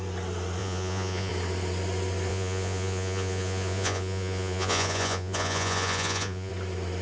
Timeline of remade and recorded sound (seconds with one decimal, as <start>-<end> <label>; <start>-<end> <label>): 0.0-0.6 recorded; 0.6-1.3 remade; 1.3-2.3 recorded; 2.3-6.5 remade; 6.5-7.0 recorded